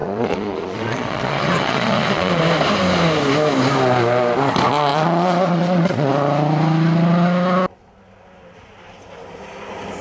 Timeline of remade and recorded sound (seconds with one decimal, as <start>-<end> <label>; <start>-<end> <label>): 0.0-2.4 remade; 2.4-4.9 recorded; 4.9-6.1 remade; 6.1-10.0 recorded